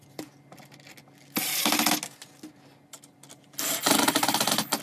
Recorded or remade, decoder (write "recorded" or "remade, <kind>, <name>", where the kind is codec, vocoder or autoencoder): recorded